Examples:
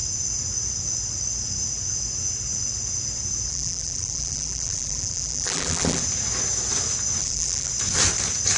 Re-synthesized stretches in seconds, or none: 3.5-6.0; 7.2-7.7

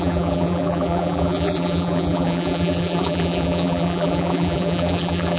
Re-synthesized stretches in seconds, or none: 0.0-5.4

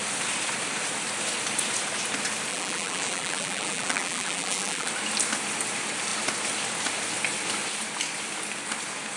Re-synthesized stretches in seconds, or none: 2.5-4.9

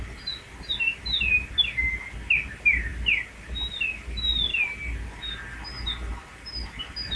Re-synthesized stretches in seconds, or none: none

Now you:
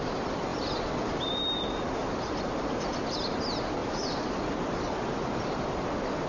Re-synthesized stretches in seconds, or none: 0.5-1.3; 2.0-2.9; 3.8-4.3

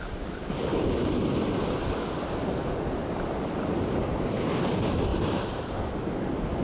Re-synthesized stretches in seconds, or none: 0.7-1.2; 5.1-5.9

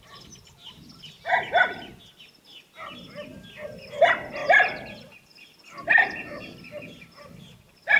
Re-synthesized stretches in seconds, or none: 4.4-6.8